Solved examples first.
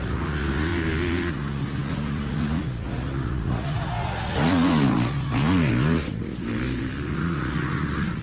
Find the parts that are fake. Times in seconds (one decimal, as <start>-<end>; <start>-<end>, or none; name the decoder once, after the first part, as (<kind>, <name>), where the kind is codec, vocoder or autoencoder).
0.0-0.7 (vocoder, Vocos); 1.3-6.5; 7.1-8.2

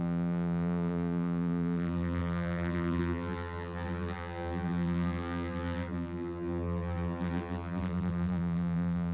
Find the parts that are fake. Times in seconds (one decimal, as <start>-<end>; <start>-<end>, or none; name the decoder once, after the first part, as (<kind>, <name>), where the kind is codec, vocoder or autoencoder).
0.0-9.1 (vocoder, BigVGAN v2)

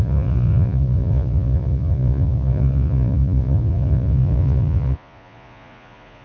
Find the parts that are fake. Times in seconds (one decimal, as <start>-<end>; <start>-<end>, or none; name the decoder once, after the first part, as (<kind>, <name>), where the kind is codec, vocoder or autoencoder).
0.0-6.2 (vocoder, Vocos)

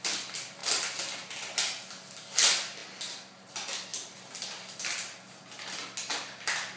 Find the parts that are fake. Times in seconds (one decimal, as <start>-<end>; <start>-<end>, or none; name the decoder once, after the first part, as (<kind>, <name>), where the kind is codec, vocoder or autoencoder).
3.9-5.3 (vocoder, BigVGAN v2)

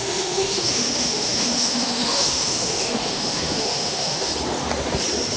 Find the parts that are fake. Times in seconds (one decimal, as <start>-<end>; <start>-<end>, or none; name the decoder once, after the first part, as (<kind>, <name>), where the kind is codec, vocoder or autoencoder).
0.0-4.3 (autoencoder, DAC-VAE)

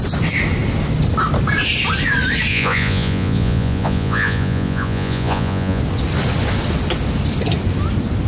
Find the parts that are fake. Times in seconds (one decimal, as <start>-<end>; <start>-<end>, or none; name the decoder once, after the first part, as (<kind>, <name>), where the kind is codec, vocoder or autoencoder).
2.5-5.8 (vocoder, Vocos)

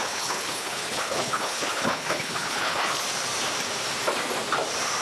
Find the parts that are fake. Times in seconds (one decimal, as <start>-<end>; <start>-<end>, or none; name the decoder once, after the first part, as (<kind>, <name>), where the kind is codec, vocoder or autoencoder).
0.0-3.0 (codec, HILCodec)

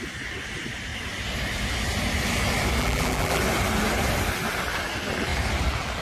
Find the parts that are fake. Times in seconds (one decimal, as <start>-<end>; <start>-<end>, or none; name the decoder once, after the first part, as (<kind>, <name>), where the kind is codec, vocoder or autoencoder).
2.8-3.4 (vocoder, BigVGAN v2)